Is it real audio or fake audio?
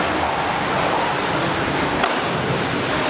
real